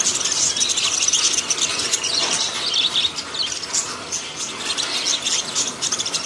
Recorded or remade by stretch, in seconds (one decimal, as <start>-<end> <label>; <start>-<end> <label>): 0.0-1.7 recorded; 1.7-2.3 remade; 2.3-6.3 recorded